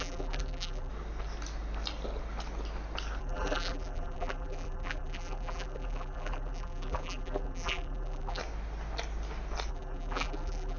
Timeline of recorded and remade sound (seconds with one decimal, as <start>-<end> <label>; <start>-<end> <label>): 0.0-0.9 remade; 0.9-3.2 recorded; 3.2-8.4 remade; 8.4-9.7 recorded; 9.7-10.8 remade